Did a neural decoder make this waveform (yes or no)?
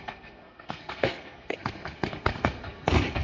yes